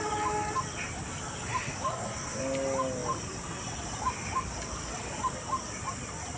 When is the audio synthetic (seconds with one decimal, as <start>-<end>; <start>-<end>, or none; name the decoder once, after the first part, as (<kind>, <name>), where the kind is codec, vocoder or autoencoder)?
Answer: 1.9-2.4 (codec, SNAC)